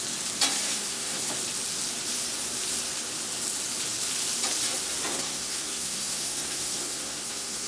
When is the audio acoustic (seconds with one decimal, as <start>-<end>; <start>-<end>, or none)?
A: 0.0-0.7; 1.3-5.1